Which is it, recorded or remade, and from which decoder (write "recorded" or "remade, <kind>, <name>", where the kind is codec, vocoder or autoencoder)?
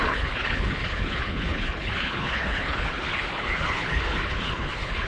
remade, codec, HILCodec